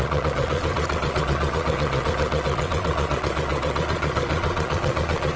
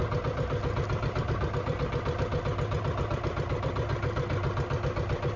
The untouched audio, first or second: second